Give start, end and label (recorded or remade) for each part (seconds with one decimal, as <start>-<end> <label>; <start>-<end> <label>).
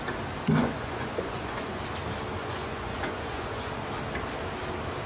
0.0-0.6 recorded; 0.6-1.8 remade; 1.8-2.4 recorded; 2.4-3.7 remade; 3.7-5.1 recorded